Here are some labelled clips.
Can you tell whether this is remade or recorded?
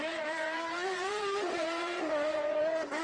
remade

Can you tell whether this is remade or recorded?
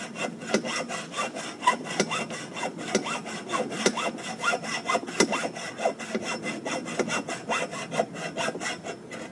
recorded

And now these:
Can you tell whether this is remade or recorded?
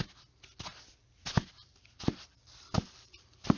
recorded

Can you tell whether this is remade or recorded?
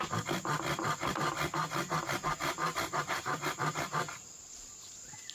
recorded